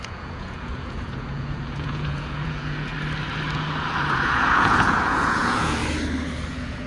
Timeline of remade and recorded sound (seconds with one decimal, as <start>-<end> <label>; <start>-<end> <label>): 0.0-2.9 remade; 2.9-3.9 recorded; 3.9-5.8 remade; 5.8-6.5 recorded; 6.5-6.9 remade